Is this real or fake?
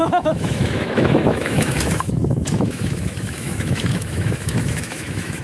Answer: fake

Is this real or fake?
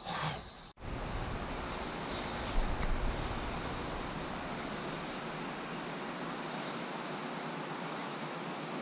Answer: real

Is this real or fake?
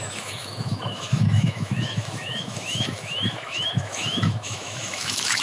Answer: fake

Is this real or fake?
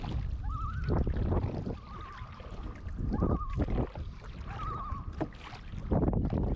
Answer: real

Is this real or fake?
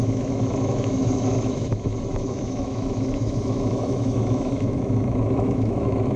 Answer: fake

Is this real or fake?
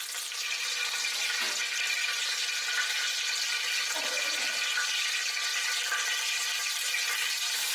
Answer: real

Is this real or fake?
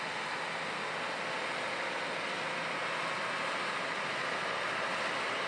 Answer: real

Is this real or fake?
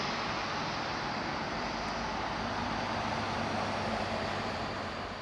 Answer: real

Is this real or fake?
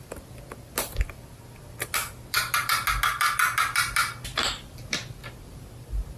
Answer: real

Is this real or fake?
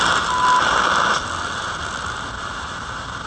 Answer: real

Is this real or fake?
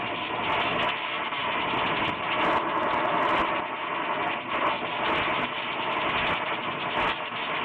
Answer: real